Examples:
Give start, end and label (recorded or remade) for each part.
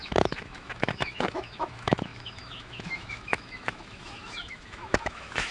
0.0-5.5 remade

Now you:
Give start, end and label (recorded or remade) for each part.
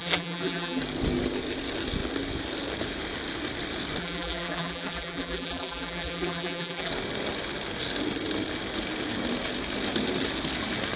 0.0-0.8 remade; 0.8-4.0 recorded; 4.0-6.9 remade; 6.9-11.0 recorded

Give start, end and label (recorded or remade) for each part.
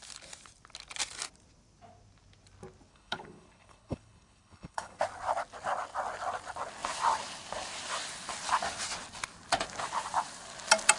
0.0-2.9 recorded; 2.9-5.0 remade; 5.0-11.0 recorded